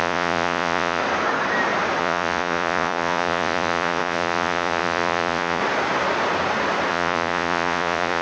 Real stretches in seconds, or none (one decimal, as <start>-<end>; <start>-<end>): 1.0-2.0; 5.6-6.9

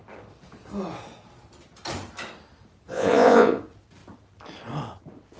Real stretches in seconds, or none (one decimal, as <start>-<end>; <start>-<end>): 0.0-2.9; 3.6-5.4

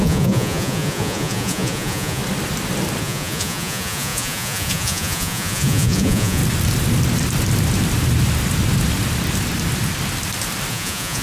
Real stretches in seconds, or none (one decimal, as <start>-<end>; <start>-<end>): 2.2-3.0; 6.4-10.7

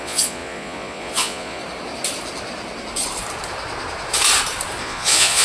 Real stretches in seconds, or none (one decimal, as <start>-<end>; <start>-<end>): 1.6-4.8

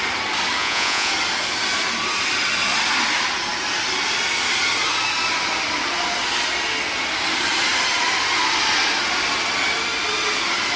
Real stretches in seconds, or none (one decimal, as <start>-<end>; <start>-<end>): 0.0-0.6; 1.1-10.8

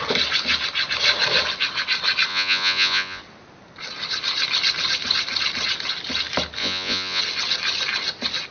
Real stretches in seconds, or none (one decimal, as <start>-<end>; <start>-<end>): 0.0-2.3; 3.2-6.6; 7.2-8.5

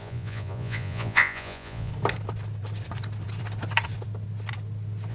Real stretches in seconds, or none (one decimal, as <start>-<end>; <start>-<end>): 1.9-5.1

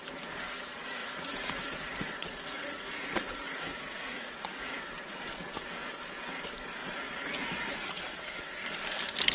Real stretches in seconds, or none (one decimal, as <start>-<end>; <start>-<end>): 0.0-1.0; 5.2-6.8; 8.4-9.3